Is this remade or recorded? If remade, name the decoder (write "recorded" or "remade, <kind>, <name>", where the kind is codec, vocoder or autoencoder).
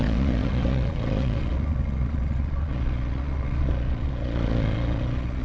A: remade, vocoder, Vocos